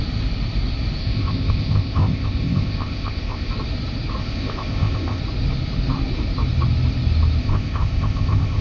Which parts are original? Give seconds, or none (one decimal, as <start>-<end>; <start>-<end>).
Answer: 0.0-1.0; 3.5-4.2; 5.2-7.4